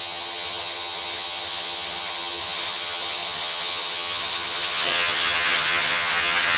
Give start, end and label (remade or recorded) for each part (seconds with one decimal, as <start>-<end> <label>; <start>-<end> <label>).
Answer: 0.0-6.6 remade